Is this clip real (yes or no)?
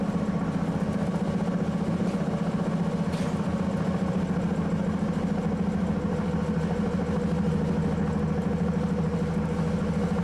yes